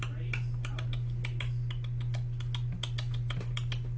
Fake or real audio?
real